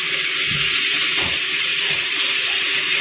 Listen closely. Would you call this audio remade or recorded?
remade